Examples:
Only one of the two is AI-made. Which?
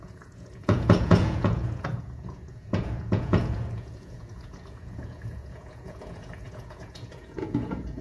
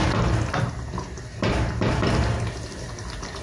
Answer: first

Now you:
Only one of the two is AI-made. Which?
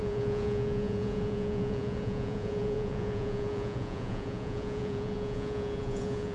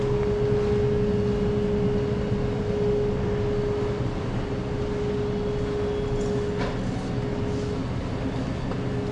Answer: first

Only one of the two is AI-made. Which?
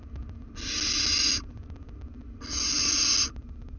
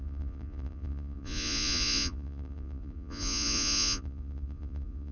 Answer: second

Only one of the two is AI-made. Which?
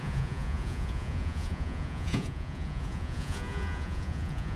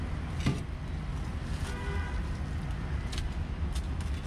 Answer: first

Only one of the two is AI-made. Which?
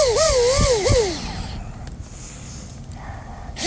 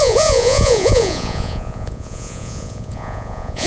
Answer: second